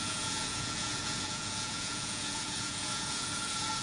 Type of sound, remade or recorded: remade